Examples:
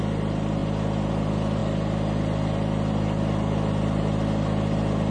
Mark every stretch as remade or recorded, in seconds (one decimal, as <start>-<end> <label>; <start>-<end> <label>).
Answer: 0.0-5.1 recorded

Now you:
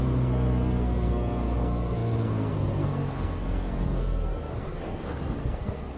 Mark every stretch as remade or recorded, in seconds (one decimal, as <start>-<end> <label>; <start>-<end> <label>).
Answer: 0.0-6.0 remade

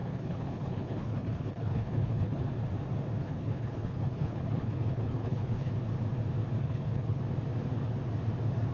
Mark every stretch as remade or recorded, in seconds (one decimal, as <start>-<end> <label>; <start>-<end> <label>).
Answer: 0.0-2.4 remade; 2.4-3.2 recorded; 3.2-5.7 remade; 5.7-6.6 recorded; 6.6-7.2 remade; 7.2-8.7 recorded

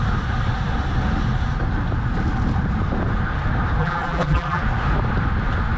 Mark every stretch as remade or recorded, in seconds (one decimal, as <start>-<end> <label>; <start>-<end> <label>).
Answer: 0.0-3.8 recorded; 3.8-4.6 remade; 4.6-5.8 recorded